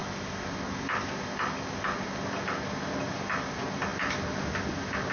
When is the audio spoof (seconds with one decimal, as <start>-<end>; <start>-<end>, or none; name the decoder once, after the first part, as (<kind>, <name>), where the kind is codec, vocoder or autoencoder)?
none